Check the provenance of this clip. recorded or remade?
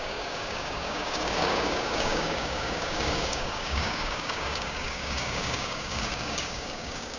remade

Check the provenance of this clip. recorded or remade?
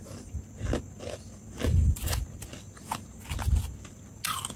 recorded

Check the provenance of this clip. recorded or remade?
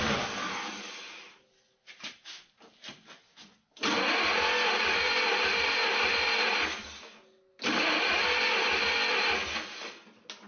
recorded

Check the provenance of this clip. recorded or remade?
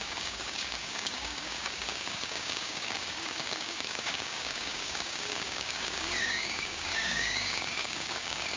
remade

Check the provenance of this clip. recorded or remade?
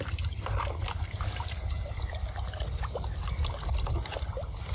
recorded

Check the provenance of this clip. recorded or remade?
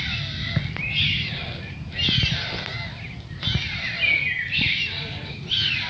recorded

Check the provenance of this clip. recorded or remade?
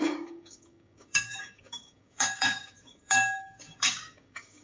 remade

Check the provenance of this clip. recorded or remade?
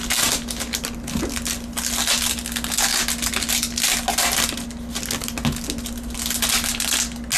recorded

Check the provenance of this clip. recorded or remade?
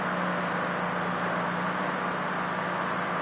recorded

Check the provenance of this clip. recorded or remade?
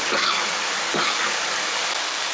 remade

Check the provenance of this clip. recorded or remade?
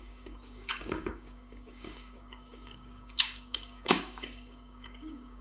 remade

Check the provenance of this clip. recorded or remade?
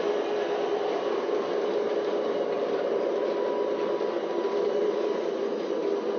recorded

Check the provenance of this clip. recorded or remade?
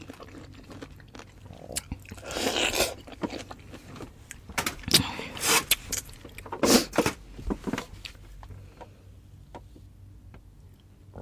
recorded